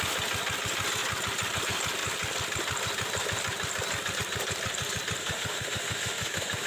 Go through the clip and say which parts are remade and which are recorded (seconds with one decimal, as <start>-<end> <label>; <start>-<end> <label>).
0.0-5.2 recorded; 5.2-6.7 remade

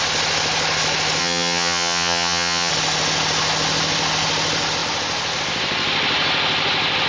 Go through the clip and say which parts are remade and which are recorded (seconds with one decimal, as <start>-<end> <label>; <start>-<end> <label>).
0.0-1.2 recorded; 1.2-2.7 remade; 2.7-7.1 recorded

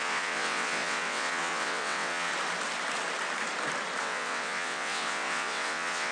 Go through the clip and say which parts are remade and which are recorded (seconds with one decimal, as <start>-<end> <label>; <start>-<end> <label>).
0.0-2.3 remade; 2.3-4.0 recorded; 4.0-6.1 remade